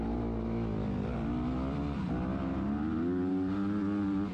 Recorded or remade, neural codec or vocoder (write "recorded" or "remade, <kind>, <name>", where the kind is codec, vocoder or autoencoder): recorded